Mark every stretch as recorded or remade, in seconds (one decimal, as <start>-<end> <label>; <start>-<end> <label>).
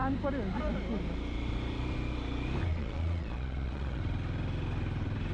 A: 0.0-2.7 recorded; 2.7-4.0 remade; 4.0-5.3 recorded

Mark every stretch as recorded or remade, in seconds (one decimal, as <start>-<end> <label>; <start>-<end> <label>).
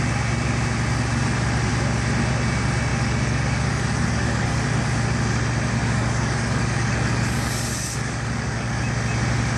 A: 0.0-2.9 recorded; 2.9-4.6 remade; 4.6-5.8 recorded; 5.8-8.8 remade; 8.8-9.6 recorded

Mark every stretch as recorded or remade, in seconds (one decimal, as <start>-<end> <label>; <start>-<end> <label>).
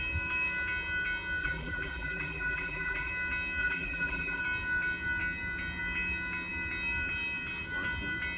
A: 0.0-1.4 recorded; 1.4-3.1 remade; 3.1-3.6 recorded; 3.6-4.4 remade; 4.4-8.4 recorded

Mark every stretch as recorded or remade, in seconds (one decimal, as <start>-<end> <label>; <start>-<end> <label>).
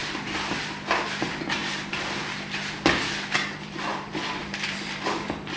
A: 0.0-1.0 recorded; 1.0-1.6 remade; 1.6-3.5 recorded; 3.5-5.6 remade